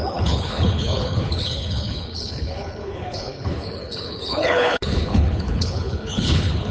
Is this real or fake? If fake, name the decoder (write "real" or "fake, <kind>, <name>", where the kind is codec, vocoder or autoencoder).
fake, codec, HILCodec